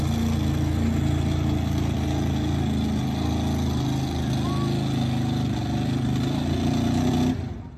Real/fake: real